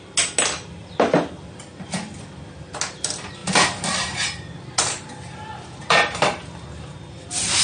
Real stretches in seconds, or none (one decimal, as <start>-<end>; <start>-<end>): 0.0-7.6